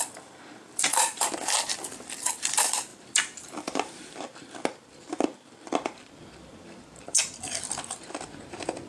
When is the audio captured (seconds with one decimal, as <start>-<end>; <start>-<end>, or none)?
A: none